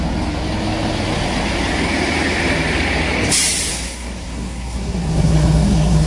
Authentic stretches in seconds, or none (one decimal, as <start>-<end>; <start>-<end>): 0.0-3.7